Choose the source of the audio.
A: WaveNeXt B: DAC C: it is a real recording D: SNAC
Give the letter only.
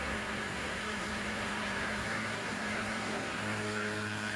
D